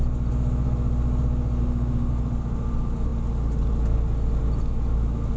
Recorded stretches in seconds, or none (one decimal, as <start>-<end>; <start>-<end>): 0.0-1.6; 2.1-5.4